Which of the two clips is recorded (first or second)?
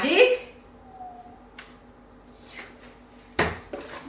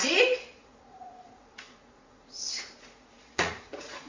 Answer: first